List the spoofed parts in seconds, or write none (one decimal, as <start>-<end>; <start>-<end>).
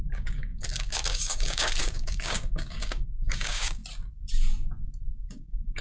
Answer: 0.0-3.8; 5.3-5.8